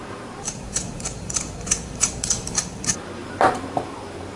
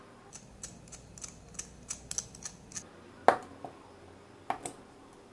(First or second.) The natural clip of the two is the second